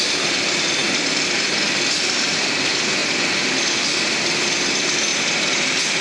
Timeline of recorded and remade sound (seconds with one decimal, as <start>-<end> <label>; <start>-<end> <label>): 0.0-6.0 recorded